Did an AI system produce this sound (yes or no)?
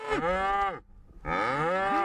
no